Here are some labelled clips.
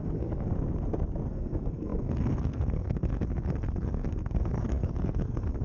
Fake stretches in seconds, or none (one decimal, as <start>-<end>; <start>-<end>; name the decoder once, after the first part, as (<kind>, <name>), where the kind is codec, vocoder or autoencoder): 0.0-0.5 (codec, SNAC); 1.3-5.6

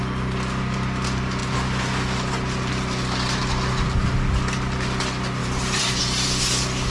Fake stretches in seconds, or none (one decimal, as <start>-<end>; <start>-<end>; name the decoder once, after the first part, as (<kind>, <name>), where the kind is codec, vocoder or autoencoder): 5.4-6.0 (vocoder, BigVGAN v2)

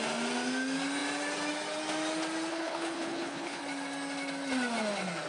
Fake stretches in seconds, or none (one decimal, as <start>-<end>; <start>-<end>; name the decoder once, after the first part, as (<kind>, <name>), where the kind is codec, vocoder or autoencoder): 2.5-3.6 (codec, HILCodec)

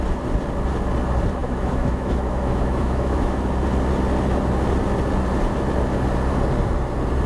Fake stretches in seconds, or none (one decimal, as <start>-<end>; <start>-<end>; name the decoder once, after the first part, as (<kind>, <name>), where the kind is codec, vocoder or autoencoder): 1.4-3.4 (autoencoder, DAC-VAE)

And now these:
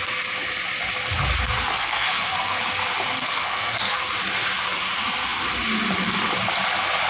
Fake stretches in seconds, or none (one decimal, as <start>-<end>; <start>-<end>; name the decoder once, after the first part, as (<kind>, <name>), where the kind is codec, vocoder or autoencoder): 1.7-2.6 (codec, SNAC); 3.2-4.1

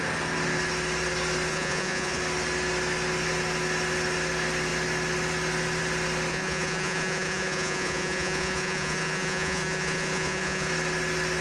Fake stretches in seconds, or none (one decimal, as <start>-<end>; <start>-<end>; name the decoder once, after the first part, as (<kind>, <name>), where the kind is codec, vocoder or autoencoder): 1.5-2.2 (vocoder, Vocos); 6.3-10.7

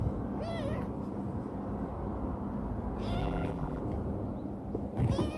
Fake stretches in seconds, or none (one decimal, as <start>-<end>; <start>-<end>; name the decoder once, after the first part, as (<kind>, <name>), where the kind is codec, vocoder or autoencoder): 3.2-3.8 (vocoder, BigVGAN v2)